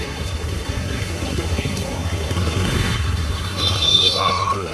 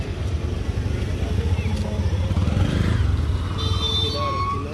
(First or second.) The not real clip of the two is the first